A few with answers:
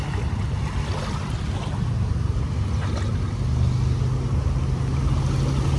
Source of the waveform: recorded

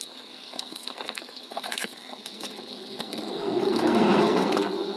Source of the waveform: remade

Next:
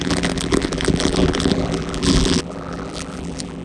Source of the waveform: remade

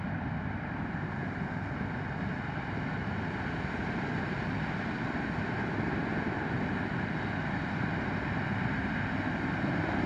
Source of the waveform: recorded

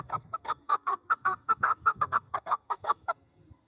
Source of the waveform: remade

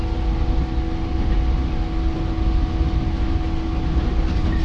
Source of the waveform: recorded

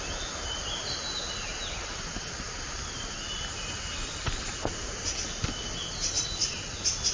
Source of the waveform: recorded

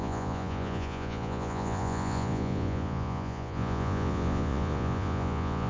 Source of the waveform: remade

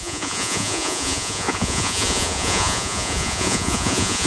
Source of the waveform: remade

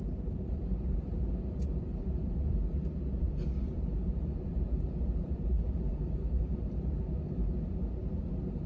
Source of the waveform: remade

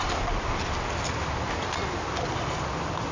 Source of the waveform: recorded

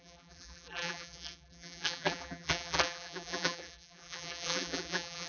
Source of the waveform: remade